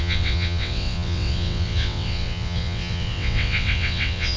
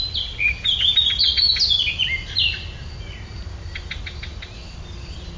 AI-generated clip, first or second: first